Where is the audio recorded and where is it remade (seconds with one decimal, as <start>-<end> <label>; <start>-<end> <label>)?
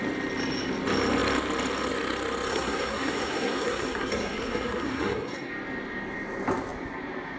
0.0-2.5 recorded; 2.5-5.5 remade; 5.5-7.4 recorded